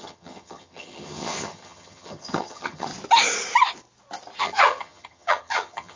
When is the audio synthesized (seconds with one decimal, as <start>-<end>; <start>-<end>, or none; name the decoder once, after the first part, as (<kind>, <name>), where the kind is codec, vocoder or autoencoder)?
0.0-2.9 (vocoder, HiFi-GAN); 4.4-6.0